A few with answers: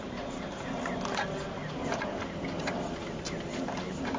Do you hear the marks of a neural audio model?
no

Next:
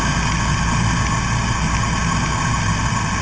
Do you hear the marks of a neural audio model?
no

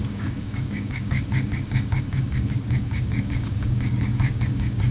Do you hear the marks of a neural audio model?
yes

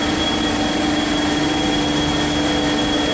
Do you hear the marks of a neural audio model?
no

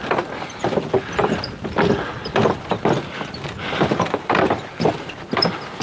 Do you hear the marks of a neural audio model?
no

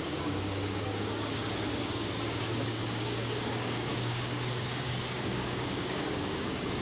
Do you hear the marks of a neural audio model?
yes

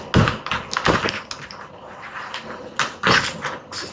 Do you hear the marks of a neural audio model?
no